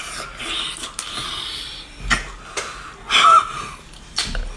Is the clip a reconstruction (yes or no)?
no